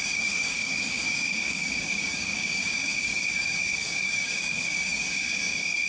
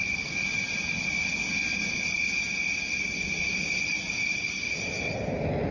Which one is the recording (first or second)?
second